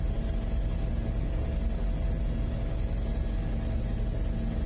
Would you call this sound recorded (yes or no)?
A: yes